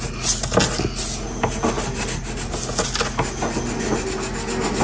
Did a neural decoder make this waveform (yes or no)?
no